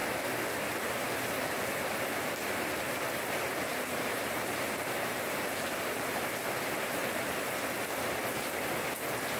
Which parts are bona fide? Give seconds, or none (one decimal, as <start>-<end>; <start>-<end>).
0.0-3.7; 6.2-9.4